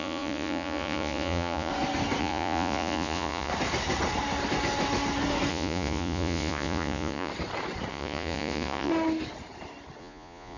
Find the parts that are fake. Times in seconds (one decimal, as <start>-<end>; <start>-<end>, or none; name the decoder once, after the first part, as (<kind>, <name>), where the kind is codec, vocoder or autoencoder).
0.0-1.7 (vocoder, Vocos); 2.2-3.5; 5.5-7.3; 7.9-8.9; 10.0-10.6